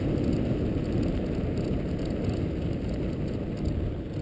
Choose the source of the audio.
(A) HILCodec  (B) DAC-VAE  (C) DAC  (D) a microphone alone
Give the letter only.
D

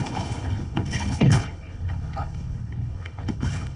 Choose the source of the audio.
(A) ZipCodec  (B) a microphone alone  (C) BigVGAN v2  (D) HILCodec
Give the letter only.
D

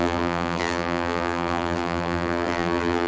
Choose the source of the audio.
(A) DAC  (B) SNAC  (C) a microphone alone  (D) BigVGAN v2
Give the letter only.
D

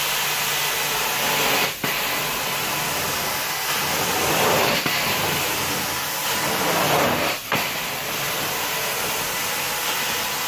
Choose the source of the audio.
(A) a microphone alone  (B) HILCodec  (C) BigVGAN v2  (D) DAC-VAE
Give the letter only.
A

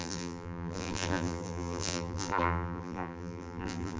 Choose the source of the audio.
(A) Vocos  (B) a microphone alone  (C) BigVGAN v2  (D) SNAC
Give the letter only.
C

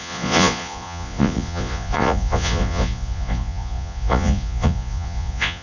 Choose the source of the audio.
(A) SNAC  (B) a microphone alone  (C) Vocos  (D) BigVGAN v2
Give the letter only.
C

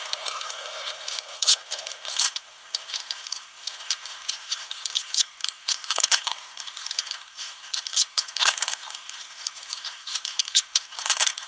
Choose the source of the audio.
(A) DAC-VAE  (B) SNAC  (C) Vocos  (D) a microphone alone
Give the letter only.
B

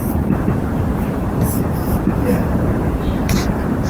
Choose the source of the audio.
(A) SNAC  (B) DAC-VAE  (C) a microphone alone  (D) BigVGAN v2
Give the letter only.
D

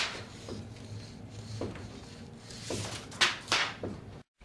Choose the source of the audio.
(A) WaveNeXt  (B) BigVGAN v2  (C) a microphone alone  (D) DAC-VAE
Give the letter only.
C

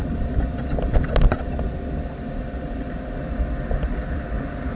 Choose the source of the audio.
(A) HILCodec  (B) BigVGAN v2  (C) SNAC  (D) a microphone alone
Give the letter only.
D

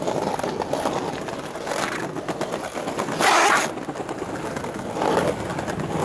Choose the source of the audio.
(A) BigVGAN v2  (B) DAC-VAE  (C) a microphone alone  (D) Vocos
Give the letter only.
C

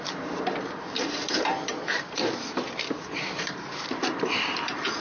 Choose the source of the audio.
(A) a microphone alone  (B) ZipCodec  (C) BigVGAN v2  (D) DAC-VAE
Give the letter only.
C